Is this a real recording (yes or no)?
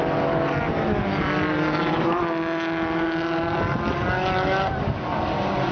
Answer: yes